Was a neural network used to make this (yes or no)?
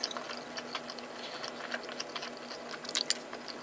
no